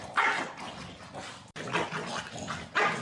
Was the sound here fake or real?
real